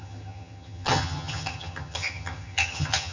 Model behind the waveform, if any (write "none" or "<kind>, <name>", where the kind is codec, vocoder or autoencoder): vocoder, HiFi-GAN